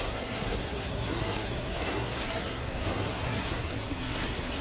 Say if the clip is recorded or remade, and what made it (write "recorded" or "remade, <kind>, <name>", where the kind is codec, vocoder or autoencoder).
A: remade, codec, SNAC